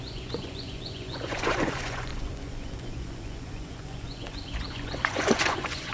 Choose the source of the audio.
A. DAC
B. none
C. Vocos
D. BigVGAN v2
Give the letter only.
C